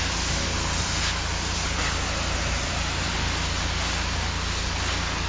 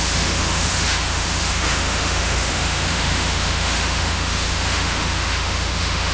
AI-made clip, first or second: second